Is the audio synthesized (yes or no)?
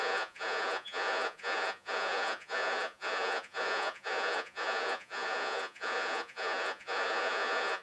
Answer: yes